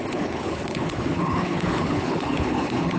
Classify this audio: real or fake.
fake